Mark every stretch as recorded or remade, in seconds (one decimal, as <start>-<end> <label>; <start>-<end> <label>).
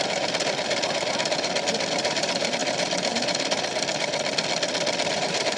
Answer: 0.0-4.1 remade; 4.1-5.1 recorded; 5.1-5.6 remade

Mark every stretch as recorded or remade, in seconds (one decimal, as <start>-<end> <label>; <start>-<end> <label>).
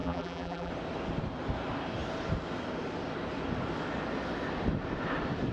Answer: 0.0-0.7 remade; 0.7-5.5 recorded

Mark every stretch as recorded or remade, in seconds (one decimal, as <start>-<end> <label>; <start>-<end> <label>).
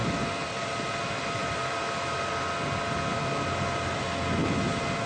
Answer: 0.0-1.4 recorded; 1.4-2.3 remade; 2.3-3.1 recorded; 3.1-4.0 remade; 4.0-5.1 recorded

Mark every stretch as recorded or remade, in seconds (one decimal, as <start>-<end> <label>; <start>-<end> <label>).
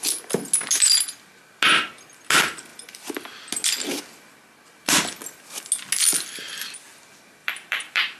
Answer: 0.0-7.4 recorded; 7.4-8.2 remade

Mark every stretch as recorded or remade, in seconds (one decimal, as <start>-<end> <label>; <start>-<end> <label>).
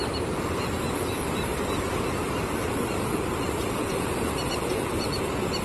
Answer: 0.0-1.5 recorded; 1.5-4.9 remade; 4.9-5.6 recorded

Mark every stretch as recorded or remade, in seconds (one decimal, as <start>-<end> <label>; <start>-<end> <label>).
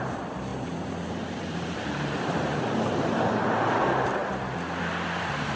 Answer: 0.0-0.5 recorded; 0.5-3.5 remade; 3.5-5.6 recorded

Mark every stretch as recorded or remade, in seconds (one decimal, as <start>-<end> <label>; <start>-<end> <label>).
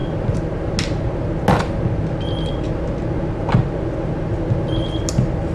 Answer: 0.0-5.5 recorded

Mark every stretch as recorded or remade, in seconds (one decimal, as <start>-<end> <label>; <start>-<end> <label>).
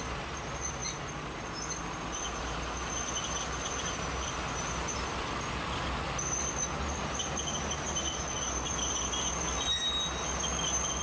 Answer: 0.0-11.0 recorded